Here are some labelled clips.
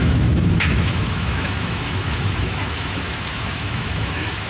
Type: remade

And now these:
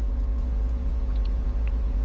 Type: remade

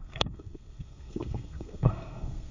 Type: remade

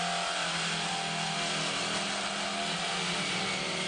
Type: recorded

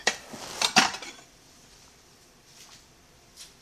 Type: remade